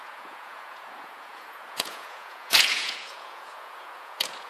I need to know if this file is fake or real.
fake